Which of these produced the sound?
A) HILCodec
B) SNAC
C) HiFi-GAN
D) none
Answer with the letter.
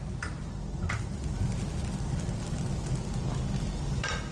D